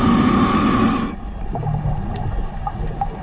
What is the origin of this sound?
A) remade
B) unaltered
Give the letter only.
B